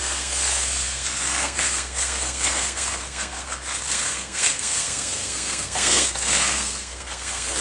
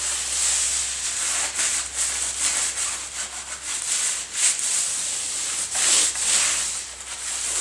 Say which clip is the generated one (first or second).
first